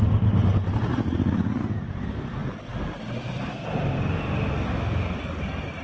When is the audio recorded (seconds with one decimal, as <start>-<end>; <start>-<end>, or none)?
0.0-0.9; 1.6-5.8